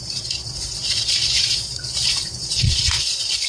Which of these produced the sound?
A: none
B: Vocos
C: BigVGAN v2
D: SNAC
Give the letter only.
B